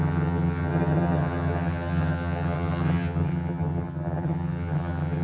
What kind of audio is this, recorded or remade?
remade